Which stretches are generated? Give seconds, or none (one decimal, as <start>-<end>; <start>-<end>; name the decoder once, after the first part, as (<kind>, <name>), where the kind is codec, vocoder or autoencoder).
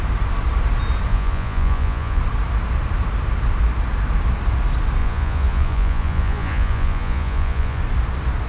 1.1-2.2 (vocoder, Vocos); 5.0-7.8